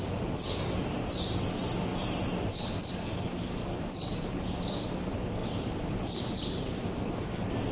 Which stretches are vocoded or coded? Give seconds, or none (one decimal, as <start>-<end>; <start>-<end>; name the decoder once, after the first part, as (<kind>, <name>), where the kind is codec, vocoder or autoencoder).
1.9-2.9 (vocoder, BigVGAN v2); 3.6-4.3; 5.4-6.6